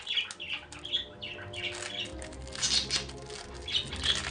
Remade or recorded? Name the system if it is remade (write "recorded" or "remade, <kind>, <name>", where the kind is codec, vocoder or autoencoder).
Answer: recorded